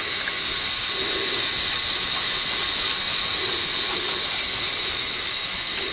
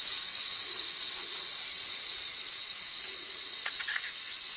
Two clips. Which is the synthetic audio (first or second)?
second